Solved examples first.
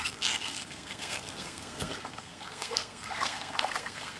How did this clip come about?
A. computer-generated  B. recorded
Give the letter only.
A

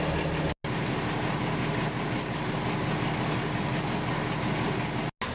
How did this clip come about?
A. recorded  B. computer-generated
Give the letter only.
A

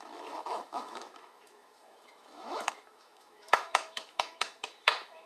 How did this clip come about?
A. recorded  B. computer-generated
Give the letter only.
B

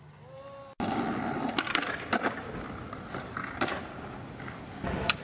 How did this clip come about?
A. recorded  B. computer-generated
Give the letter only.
A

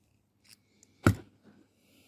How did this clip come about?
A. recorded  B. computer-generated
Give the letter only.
A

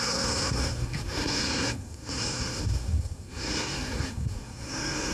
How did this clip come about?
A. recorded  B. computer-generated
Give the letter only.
B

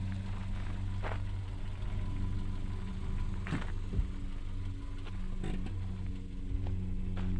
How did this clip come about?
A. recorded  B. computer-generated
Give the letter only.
A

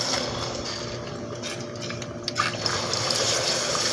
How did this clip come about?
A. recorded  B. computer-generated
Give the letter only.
A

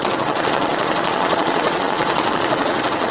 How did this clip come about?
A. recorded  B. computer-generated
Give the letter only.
B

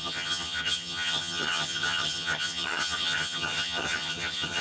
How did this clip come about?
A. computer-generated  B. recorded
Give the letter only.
A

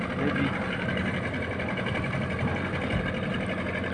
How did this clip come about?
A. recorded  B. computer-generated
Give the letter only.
A